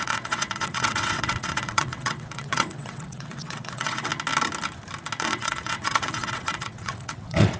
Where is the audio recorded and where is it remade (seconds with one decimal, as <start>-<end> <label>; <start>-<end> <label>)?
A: 0.0-4.1 remade; 4.1-5.2 recorded; 5.2-7.6 remade